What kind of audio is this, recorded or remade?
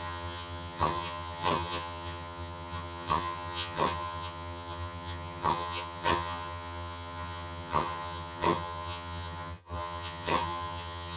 remade